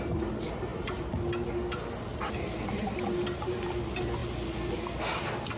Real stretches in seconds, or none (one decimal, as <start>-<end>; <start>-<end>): 0.0-5.6